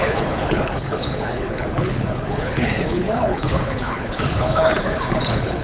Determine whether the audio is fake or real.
fake